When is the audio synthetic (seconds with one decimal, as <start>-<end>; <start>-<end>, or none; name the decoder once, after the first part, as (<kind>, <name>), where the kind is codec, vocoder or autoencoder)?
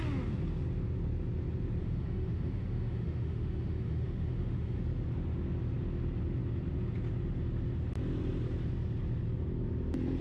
1.8-4.8 (autoencoder, DAC-VAE)